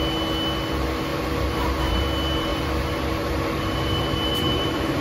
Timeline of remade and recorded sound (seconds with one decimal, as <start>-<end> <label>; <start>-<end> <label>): 0.0-1.1 recorded; 1.1-2.0 remade; 2.0-2.5 recorded; 2.5-5.0 remade